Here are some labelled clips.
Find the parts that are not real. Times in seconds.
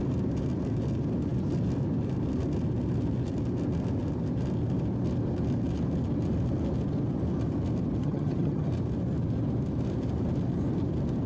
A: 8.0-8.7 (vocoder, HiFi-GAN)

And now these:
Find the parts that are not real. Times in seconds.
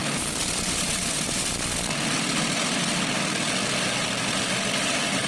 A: 0.0-2.4 (vocoder, BigVGAN v2); 3.6-5.3